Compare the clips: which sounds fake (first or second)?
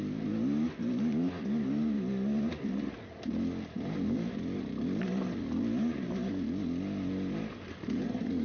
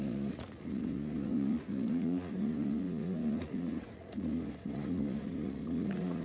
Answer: second